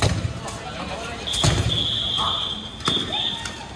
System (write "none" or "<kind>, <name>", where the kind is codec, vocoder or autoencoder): none